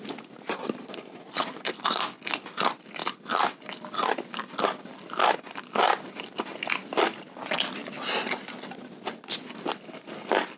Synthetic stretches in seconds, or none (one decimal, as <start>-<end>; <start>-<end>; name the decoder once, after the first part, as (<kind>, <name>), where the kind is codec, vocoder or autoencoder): none